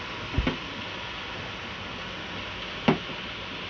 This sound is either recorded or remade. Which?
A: recorded